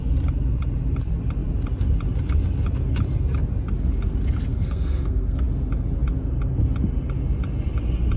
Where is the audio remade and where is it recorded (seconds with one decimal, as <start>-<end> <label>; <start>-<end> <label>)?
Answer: 0.0-4.5 recorded; 4.5-5.4 remade; 5.4-8.2 recorded